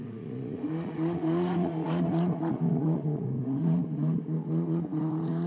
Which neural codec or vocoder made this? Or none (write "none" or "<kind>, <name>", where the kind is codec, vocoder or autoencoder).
vocoder, Vocos